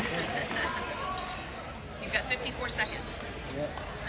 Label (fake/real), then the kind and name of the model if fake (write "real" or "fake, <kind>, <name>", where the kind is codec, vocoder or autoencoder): real